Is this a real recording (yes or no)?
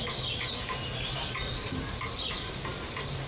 no